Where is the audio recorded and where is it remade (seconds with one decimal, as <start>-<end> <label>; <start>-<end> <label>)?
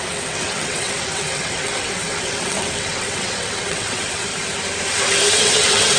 0.0-4.3 remade; 4.3-5.3 recorded; 5.3-6.0 remade